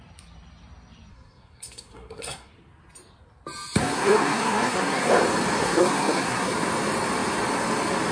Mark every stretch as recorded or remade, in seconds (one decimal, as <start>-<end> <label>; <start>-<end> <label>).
0.0-1.1 recorded; 1.1-2.5 remade; 2.5-3.8 recorded; 3.8-5.1 remade; 5.1-5.6 recorded; 5.6-6.5 remade; 6.5-8.1 recorded